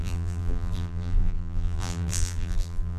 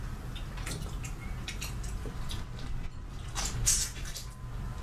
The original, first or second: second